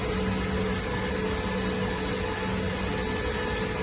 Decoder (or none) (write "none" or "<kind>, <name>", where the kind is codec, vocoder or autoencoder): none